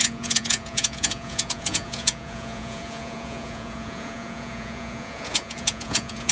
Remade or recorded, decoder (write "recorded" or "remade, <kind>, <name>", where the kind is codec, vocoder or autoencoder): remade, vocoder, Vocos